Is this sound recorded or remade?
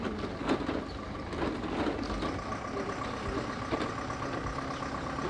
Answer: recorded